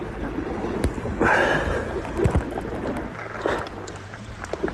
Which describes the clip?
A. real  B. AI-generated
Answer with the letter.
A